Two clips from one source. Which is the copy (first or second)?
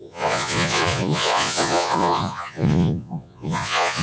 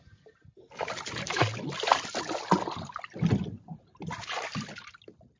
first